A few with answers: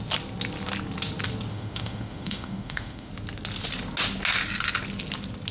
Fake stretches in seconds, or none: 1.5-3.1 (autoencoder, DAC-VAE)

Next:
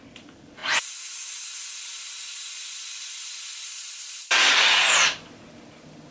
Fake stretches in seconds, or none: none